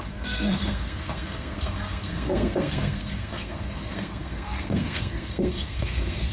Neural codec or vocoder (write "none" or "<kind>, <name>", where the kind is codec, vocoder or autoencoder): codec, SNAC